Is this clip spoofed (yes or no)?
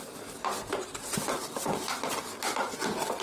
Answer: no